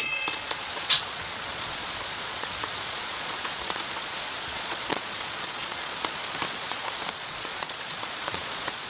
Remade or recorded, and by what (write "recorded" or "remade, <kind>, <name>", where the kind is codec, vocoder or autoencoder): remade, vocoder, Vocos